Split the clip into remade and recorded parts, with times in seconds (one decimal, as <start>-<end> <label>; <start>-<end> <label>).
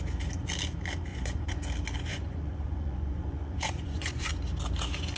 0.0-1.1 recorded; 1.1-1.6 remade; 1.6-2.1 recorded; 2.1-4.3 remade; 4.3-5.2 recorded